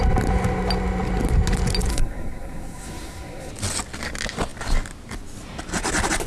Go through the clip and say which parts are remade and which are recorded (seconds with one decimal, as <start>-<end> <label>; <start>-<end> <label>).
0.0-1.9 recorded; 1.9-3.5 remade; 3.5-6.3 recorded